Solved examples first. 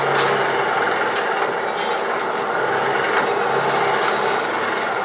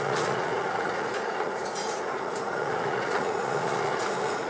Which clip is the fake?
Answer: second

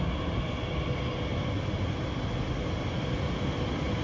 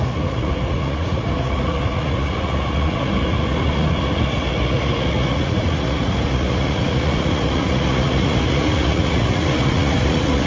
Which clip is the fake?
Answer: second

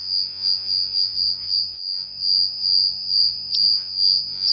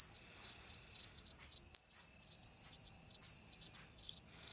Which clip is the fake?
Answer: first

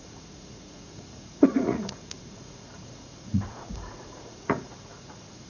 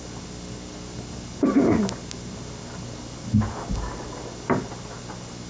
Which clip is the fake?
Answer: first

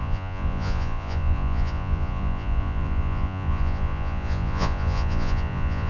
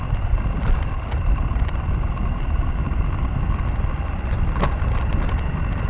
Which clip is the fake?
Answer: first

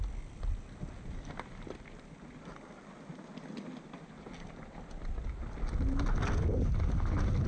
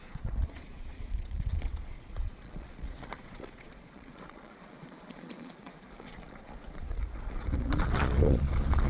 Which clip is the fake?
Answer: second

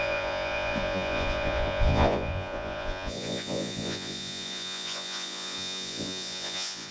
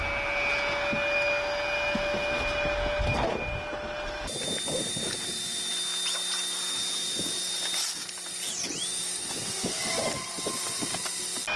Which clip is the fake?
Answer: first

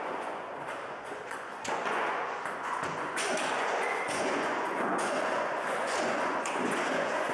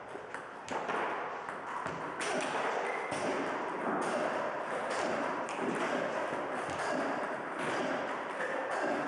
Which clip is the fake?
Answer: first